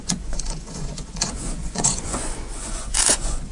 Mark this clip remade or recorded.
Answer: remade